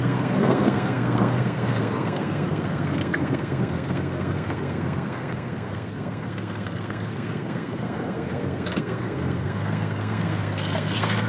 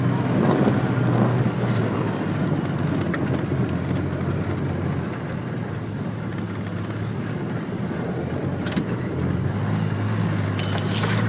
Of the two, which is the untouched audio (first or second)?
second